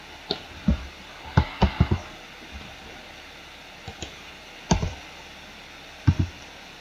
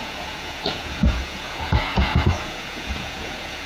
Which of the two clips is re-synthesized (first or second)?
second